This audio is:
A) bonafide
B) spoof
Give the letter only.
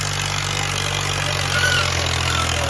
A